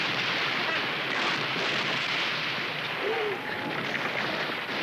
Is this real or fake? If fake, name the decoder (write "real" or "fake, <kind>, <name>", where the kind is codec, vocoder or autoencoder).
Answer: fake, vocoder, BigVGAN v2